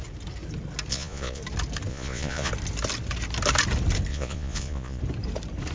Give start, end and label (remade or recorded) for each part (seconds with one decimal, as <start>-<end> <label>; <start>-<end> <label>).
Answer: 0.0-0.9 recorded; 0.9-1.4 remade; 1.4-1.9 recorded; 1.9-2.5 remade; 2.5-4.1 recorded; 4.1-5.0 remade; 5.0-5.7 recorded